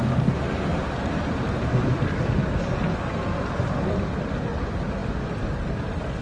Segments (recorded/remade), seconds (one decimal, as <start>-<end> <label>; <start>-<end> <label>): 0.0-0.7 recorded; 0.7-2.0 remade; 2.0-6.2 recorded